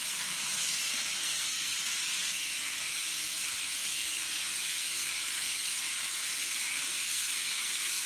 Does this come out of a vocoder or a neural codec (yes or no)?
yes